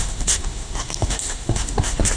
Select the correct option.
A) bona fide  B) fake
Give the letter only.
B